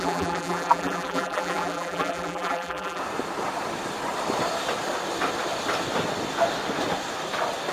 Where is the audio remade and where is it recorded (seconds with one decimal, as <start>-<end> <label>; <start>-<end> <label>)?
0.0-3.0 remade; 3.0-7.7 recorded

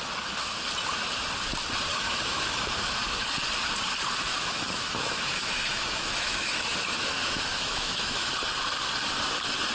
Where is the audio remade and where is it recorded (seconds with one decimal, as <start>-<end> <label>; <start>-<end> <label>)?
0.0-1.9 recorded; 1.9-2.9 remade; 2.9-4.3 recorded; 4.3-8.3 remade; 8.3-9.7 recorded